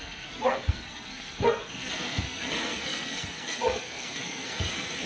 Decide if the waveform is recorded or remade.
remade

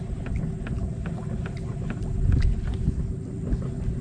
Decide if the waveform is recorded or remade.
recorded